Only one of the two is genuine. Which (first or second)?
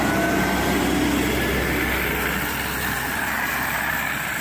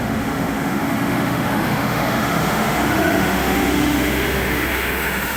first